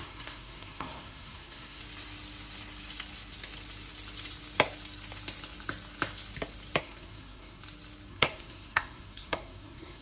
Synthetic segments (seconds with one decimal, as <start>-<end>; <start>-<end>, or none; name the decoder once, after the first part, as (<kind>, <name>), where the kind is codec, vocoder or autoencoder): 0.0-1.8 (codec, SNAC); 6.8-7.6; 8.1-10.0